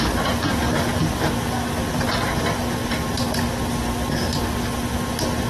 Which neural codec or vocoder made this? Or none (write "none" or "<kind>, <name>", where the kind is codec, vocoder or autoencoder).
none